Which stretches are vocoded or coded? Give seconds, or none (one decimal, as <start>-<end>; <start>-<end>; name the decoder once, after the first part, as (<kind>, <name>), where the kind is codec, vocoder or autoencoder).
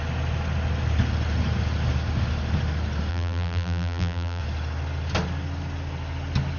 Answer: 3.1-4.4 (vocoder, BigVGAN v2)